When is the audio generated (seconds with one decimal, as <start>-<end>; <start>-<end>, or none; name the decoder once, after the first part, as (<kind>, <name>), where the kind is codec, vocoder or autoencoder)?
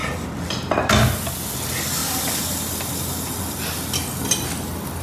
none